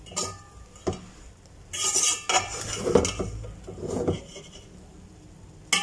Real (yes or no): yes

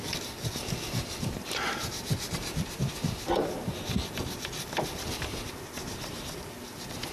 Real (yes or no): yes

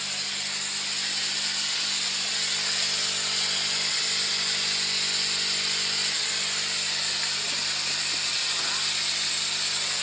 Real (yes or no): yes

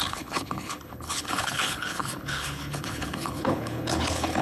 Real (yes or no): no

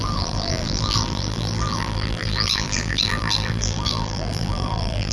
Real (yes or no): no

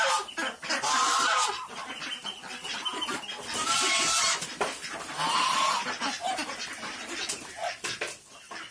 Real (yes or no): yes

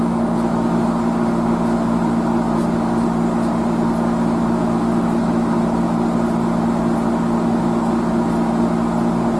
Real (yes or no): yes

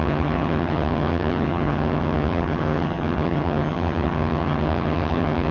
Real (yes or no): no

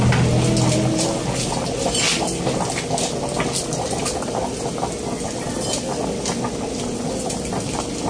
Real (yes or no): yes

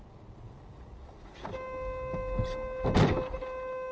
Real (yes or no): yes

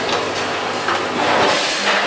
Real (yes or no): yes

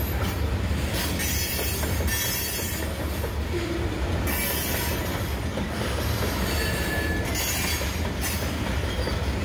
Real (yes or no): yes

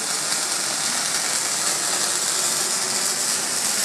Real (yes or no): yes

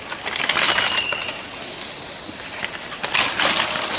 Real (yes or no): yes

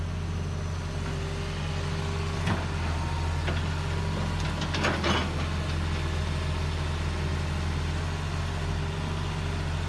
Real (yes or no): yes